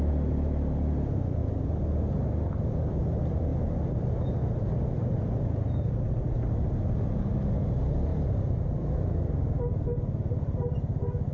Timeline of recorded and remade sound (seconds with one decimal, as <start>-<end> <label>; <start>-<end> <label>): 0.0-8.1 recorded; 8.1-9.0 remade; 9.0-11.3 recorded